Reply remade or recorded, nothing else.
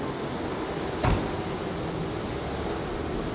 recorded